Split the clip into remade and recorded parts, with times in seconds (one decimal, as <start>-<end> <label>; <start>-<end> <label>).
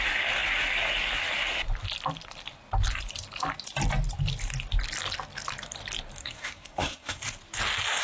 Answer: 0.0-6.2 recorded; 6.2-7.2 remade; 7.2-8.0 recorded